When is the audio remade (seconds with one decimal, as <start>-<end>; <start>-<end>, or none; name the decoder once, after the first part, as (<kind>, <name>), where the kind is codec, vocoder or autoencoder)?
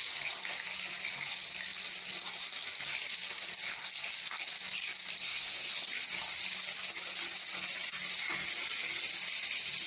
5.2-5.7 (codec, SNAC)